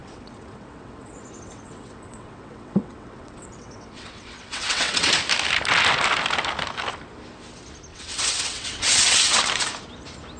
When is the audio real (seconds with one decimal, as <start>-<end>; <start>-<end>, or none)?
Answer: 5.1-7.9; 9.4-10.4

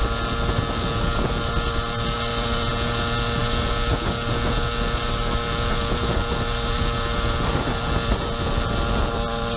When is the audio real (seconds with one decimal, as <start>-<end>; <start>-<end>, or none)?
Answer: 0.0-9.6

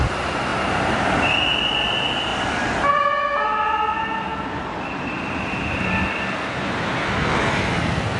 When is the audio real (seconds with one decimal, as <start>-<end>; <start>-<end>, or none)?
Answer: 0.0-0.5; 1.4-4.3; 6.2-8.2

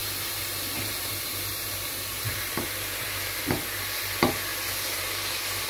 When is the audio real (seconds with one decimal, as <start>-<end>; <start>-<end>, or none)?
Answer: 3.4-5.7

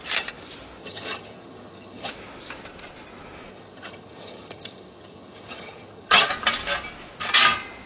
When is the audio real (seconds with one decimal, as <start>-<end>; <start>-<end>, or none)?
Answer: 0.0-0.8; 2.1-3.5; 6.3-7.9